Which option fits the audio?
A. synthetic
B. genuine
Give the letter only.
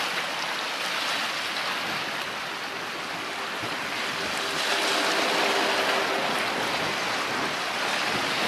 B